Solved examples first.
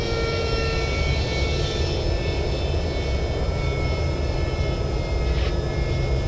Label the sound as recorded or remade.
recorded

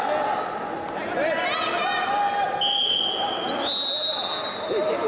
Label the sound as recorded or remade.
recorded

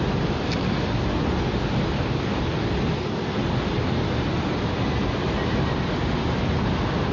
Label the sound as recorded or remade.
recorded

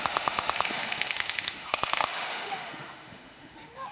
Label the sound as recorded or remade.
remade